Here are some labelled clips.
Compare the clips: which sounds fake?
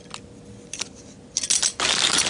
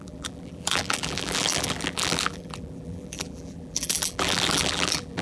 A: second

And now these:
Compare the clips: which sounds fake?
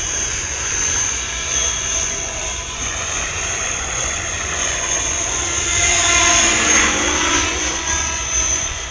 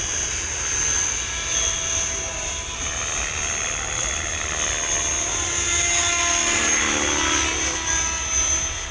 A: first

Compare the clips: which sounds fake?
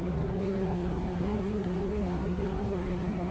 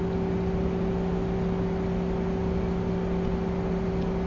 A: first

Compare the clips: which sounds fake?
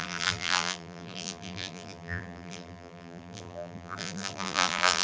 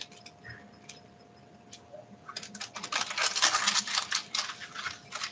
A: first